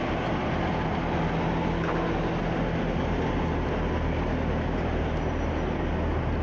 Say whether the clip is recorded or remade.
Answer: recorded